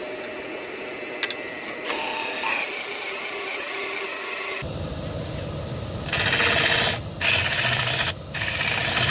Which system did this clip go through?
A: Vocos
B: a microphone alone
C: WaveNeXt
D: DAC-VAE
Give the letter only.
B